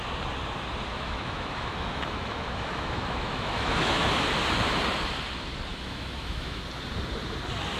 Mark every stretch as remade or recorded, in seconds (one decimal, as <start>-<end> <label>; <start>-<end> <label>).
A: 0.0-0.9 recorded; 0.9-4.1 remade; 4.1-5.7 recorded; 5.7-6.6 remade; 6.6-7.8 recorded